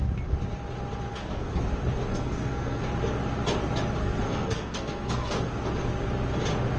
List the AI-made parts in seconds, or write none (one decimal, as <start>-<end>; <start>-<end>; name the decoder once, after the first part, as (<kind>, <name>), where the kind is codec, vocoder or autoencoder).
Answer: 1.1-1.6 (codec, SNAC); 2.1-2.8; 4.0-5.5